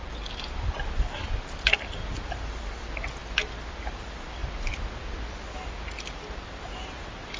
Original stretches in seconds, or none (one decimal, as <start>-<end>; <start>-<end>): 0.0-1.7; 4.4-7.0